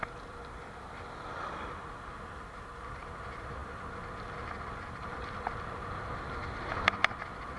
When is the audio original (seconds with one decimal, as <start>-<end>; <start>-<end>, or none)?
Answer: 0.0-7.6